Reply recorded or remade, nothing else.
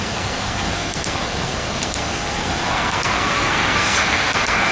remade